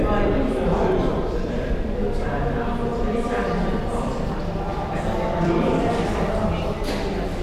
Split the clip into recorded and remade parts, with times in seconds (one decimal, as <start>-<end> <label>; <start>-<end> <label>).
0.0-2.9 recorded; 2.9-3.7 remade; 3.7-4.7 recorded; 4.7-6.7 remade; 6.7-7.4 recorded